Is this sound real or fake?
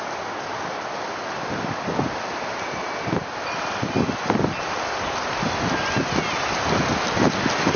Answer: real